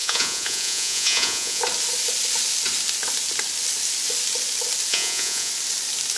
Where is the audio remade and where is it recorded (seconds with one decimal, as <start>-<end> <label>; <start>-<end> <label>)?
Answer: 0.0-1.6 remade; 1.6-4.9 recorded; 4.9-5.5 remade; 5.5-6.2 recorded